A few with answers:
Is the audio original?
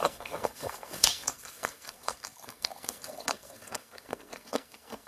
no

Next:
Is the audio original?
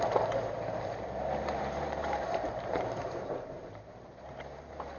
no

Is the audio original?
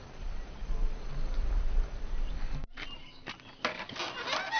yes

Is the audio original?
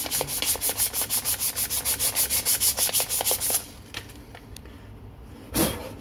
yes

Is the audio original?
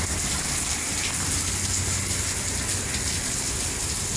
yes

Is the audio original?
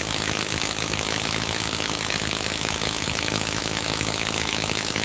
no